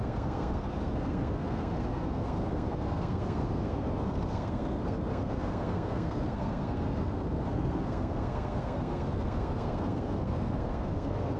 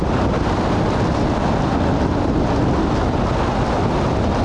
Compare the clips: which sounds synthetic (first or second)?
first